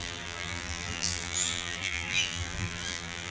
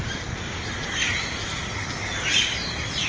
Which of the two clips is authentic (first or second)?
second